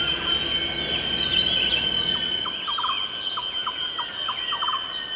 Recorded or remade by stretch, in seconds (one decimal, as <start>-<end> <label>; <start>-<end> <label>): 0.0-5.2 recorded